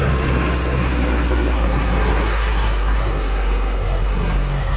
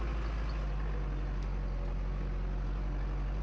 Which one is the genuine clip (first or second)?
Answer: second